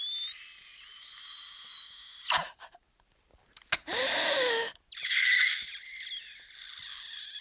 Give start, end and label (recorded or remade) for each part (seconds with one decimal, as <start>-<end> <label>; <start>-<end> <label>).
0.0-7.4 recorded